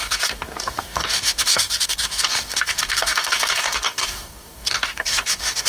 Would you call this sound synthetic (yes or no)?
yes